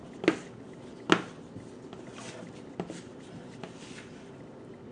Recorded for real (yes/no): yes